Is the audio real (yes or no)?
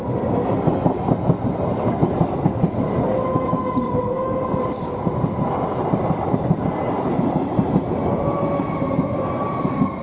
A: yes